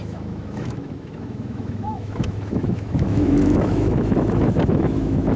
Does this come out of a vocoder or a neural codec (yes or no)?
yes